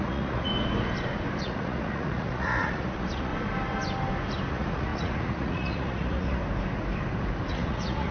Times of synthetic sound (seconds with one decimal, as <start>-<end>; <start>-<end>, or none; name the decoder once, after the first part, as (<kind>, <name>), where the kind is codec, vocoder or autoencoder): 0.0-0.5 (vocoder, Vocos); 1.4-3.3; 4.5-6.4; 7.5-8.1